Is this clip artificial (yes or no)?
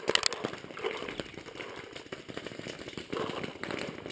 no